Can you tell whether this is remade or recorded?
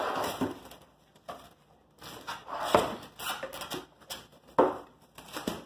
recorded